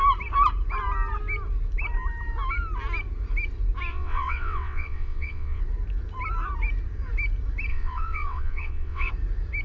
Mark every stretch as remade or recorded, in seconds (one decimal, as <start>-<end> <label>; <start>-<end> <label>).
0.0-3.9 recorded; 3.9-5.6 remade; 5.6-7.7 recorded; 7.7-9.1 remade; 9.1-9.6 recorded